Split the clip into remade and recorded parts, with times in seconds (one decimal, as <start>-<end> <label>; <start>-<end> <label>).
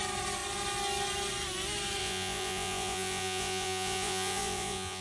0.0-2.0 recorded; 2.0-5.0 remade